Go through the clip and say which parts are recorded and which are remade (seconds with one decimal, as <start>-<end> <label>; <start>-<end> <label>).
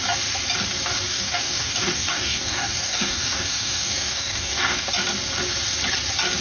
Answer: 0.0-1.1 recorded; 1.1-4.9 remade; 4.9-6.4 recorded